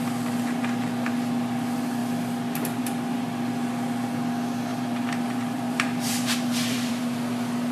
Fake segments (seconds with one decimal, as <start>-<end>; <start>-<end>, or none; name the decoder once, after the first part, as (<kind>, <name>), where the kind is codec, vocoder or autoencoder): 4.7-7.0 (vocoder, BigVGAN v2)